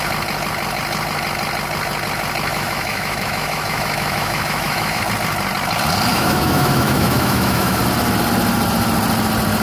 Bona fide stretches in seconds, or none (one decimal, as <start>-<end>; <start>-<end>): 0.0-2.5; 5.0-6.1; 7.8-9.6